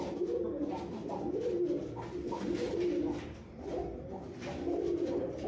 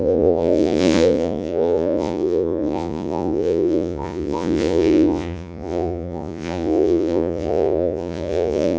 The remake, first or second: second